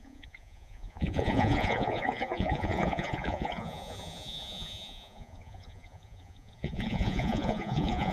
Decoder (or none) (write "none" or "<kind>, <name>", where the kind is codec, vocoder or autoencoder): vocoder, Vocos